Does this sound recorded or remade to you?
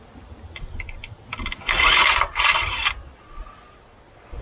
recorded